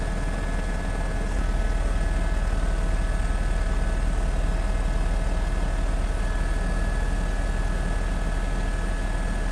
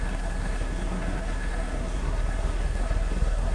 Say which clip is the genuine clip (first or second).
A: first